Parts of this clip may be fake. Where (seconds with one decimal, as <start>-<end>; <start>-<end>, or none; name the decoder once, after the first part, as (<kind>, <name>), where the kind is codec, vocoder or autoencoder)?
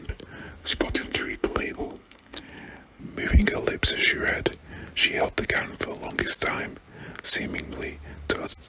0.6-3.0 (codec, SNAC)